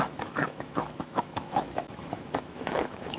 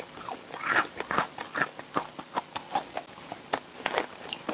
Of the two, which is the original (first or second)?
second